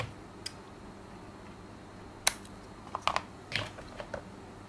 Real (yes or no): yes